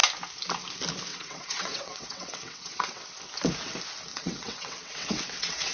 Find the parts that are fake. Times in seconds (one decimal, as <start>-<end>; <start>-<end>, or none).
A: 1.1-3.0; 4.1-5.7